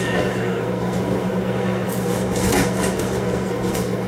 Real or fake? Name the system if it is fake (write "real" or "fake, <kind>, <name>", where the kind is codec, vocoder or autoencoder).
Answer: fake, codec, SNAC